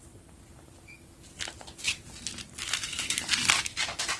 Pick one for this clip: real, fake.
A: real